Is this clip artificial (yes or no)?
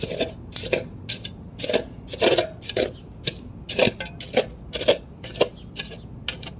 no